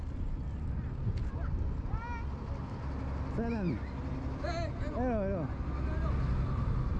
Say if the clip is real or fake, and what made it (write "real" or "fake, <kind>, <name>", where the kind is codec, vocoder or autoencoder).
real